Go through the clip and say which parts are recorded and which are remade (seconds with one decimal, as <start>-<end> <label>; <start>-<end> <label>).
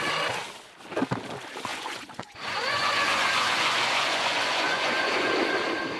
0.0-1.7 recorded; 1.7-5.3 remade; 5.3-6.0 recorded